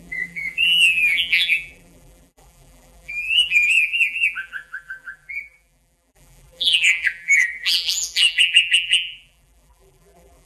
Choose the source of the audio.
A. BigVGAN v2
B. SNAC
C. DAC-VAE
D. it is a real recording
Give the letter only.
A